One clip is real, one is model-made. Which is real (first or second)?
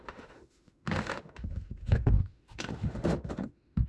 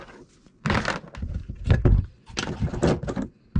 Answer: second